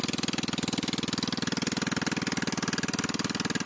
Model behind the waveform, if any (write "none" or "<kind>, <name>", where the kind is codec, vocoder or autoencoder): none